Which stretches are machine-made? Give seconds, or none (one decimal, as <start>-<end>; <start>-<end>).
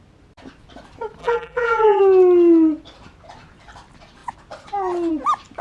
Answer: 1.2-2.0